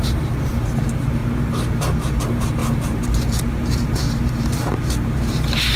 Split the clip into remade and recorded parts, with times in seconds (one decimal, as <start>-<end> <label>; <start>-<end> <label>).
0.0-5.8 remade